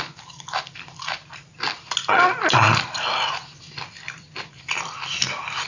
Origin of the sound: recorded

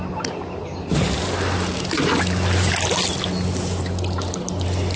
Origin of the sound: recorded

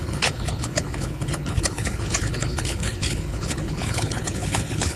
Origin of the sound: remade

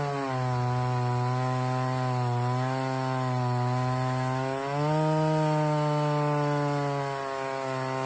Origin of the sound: recorded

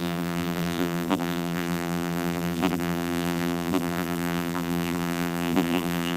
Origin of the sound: remade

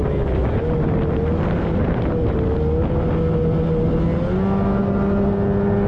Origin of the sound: recorded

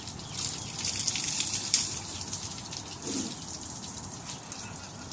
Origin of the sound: recorded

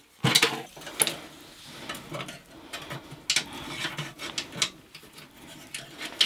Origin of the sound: recorded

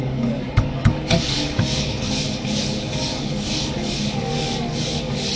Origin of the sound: remade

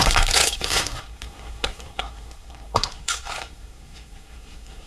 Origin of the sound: remade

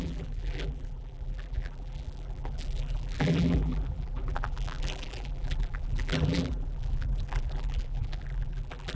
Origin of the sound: remade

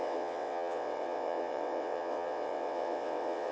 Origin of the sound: remade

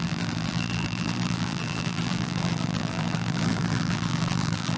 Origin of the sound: remade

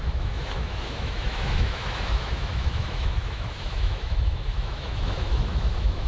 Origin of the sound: remade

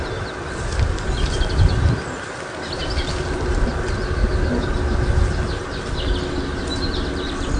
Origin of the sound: recorded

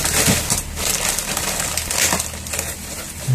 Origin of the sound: recorded